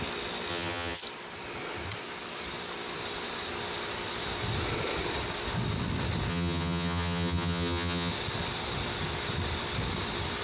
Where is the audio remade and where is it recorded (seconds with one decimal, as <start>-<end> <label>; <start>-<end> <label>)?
0.0-0.5 recorded; 0.5-1.0 remade; 1.0-6.3 recorded; 6.3-8.1 remade; 8.1-10.4 recorded